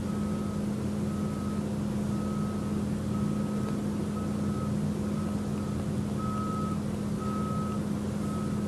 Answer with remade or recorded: recorded